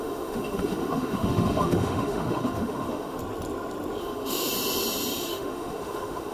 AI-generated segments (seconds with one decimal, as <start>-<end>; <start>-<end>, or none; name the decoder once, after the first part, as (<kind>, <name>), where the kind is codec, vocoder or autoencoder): 0.0-3.2 (autoencoder, DAC-VAE); 4.0-4.5; 5.2-6.3